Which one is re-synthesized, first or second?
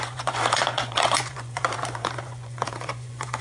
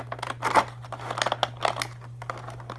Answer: first